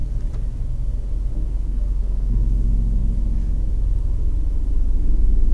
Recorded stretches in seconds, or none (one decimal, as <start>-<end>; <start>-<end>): 0.0-1.3; 2.4-5.5